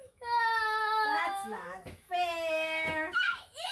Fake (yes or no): yes